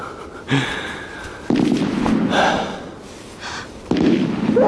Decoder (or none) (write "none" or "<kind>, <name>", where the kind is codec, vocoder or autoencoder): none